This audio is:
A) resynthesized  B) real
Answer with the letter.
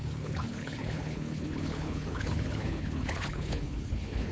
A